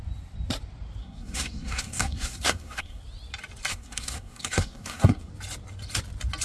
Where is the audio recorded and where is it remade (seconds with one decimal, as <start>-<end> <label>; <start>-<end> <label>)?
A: 0.0-1.0 recorded; 1.0-3.0 remade; 3.0-3.7 recorded; 3.7-5.3 remade; 5.3-6.4 recorded